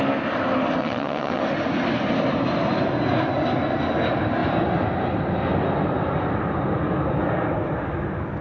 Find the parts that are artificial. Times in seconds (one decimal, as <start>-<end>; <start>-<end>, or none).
0.8-1.4